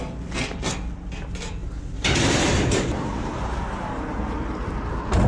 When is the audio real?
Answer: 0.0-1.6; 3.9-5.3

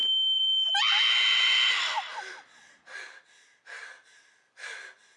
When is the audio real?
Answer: 0.8-2.1; 3.9-5.2